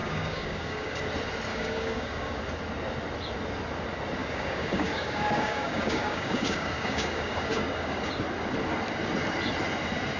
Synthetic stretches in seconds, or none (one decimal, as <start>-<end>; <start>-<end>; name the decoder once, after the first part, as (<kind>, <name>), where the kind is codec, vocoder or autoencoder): 0.0-1.0 (codec, DAC); 1.5-2.4; 4.2-8.1